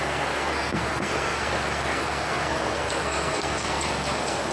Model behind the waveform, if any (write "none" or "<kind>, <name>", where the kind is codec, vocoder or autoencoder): codec, SNAC